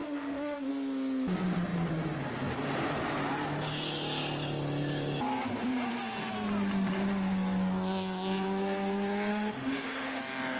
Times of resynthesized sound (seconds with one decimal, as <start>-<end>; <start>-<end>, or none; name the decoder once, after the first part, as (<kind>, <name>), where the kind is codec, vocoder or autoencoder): 0.0-0.7 (autoencoder, DAC-VAE); 9.3-10.2